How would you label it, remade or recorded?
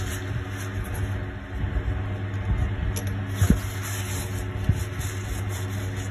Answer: recorded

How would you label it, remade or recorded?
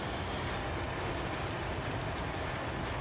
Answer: recorded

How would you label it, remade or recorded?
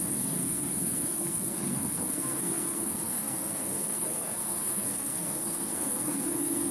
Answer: remade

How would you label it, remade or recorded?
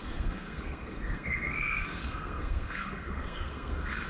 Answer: remade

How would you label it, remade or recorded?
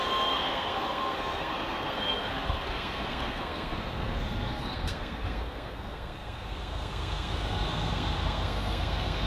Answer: remade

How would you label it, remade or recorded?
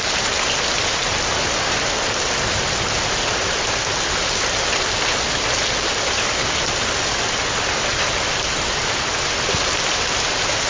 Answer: recorded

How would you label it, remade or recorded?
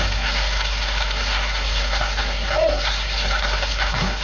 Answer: remade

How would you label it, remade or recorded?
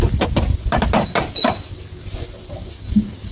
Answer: recorded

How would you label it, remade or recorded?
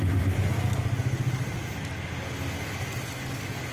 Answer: recorded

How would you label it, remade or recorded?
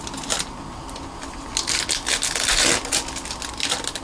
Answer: recorded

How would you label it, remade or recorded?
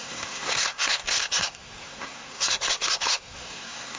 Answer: remade